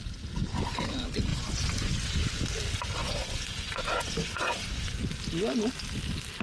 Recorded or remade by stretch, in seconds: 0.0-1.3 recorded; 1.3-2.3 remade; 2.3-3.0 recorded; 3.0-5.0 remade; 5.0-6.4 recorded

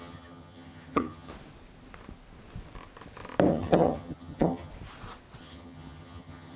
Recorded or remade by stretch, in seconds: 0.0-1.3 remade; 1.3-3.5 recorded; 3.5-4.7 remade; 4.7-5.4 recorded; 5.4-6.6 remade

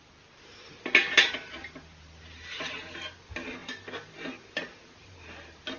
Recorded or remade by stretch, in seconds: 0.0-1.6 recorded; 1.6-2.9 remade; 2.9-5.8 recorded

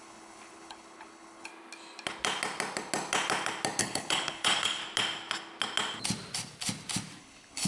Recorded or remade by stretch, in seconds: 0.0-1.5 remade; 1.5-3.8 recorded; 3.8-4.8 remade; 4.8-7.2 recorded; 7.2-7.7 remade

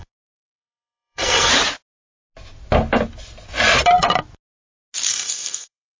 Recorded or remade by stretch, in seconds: 0.0-1.5 remade; 1.5-5.1 recorded; 5.1-6.0 remade

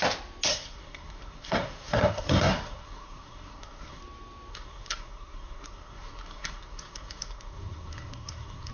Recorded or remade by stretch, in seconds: 0.0-0.5 recorded; 0.5-4.0 remade; 4.0-4.5 recorded; 4.5-8.7 remade

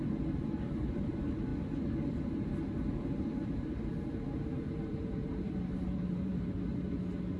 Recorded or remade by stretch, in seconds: 0.0-6.7 remade; 6.7-7.4 recorded